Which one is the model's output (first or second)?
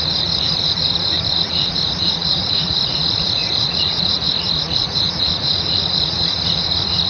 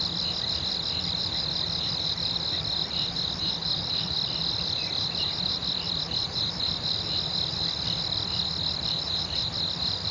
first